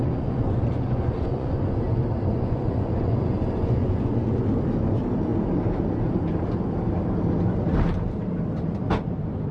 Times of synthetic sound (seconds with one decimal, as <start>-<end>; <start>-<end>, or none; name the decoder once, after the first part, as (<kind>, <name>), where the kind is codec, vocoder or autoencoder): 0.0-1.8 (vocoder, Vocos); 2.3-4.4